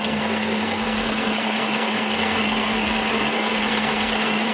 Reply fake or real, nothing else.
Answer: fake